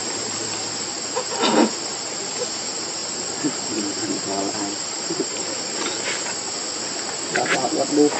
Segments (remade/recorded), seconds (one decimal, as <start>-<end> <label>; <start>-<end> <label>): 0.0-8.2 recorded